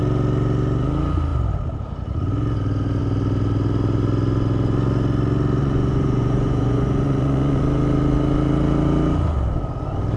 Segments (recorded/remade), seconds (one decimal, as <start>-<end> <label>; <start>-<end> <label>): 0.0-5.6 recorded; 5.6-7.6 remade; 7.6-10.2 recorded